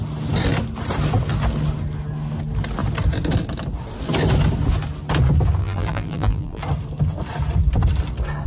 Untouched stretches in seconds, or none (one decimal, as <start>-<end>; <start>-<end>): 0.0-5.6; 6.6-8.5